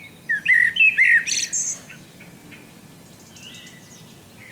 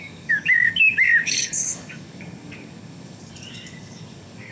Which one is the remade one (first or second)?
second